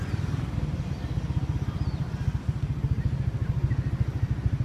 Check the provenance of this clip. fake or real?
real